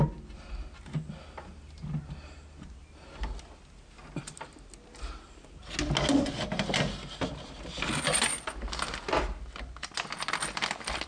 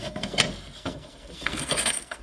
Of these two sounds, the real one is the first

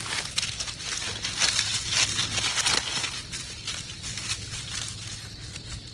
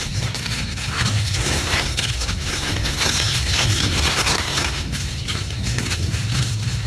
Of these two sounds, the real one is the first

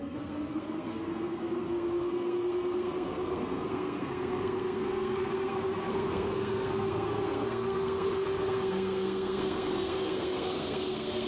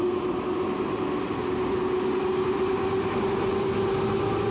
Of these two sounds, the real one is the second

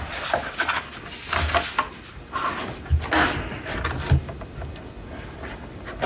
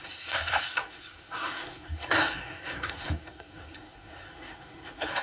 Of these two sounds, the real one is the first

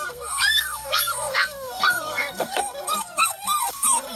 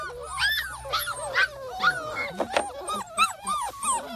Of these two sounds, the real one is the second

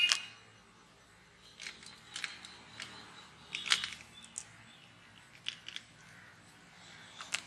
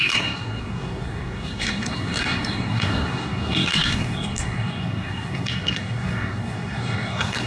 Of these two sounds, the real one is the first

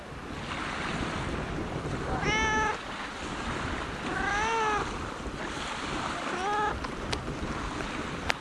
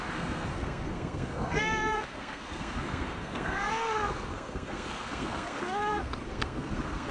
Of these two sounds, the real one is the first